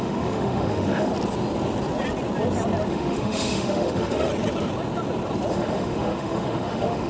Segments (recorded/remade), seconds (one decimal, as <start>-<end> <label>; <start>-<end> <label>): 0.0-1.1 remade; 1.1-2.9 recorded; 2.9-4.3 remade; 4.3-5.5 recorded; 5.5-7.1 remade